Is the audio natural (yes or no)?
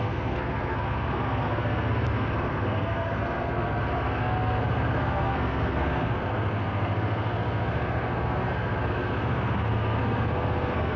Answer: no